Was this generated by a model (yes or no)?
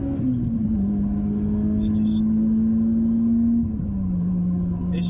no